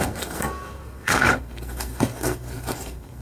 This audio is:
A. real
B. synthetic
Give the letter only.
B